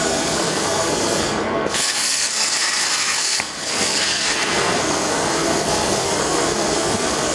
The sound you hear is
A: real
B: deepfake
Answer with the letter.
B